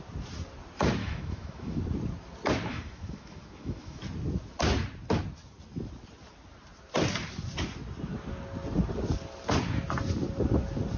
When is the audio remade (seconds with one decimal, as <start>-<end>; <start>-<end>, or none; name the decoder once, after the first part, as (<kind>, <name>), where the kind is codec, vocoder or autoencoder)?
1.0-1.8 (autoencoder, DAC-VAE); 2.7-4.0